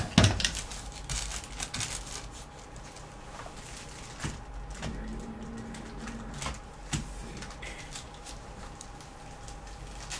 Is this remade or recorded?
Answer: recorded